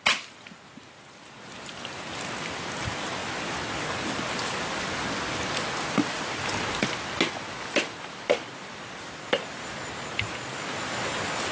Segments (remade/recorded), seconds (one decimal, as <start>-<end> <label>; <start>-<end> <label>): 0.0-11.5 recorded